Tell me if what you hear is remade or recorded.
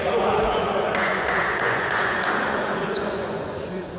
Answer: remade